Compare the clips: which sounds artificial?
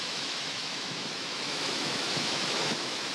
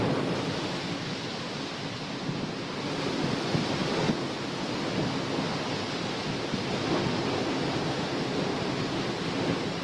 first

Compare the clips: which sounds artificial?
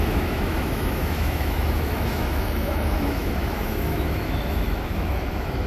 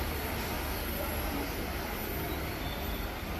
first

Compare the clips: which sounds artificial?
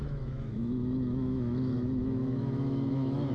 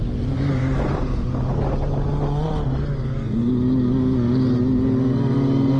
first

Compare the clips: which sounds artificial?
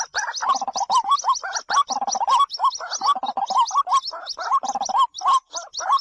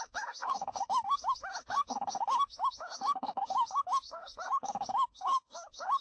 second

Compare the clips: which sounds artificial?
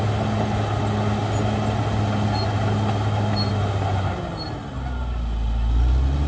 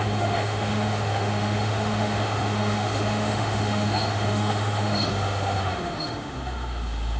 second